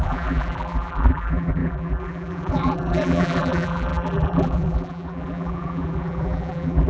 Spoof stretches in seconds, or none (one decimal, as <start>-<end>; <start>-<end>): 0.0-6.9